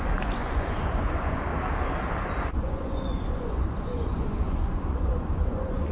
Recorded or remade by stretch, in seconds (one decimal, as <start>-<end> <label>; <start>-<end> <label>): 0.0-1.5 remade; 1.5-2.4 recorded; 2.4-5.9 remade